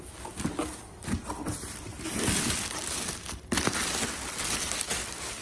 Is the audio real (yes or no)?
yes